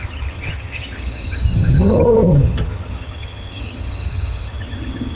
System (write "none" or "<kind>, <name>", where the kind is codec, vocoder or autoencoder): vocoder, HiFi-GAN